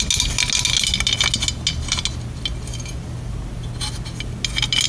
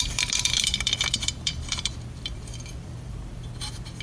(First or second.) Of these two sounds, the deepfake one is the second